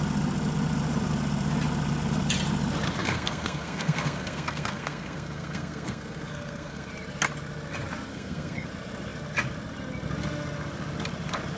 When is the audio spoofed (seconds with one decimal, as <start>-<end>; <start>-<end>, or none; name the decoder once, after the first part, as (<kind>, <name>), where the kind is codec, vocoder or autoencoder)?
3.0-6.9 (codec, SNAC); 8.1-8.7